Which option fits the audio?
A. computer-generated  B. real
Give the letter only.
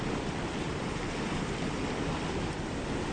B